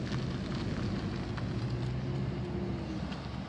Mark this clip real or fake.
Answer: real